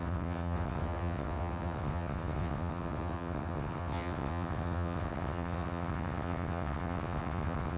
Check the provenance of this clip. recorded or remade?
remade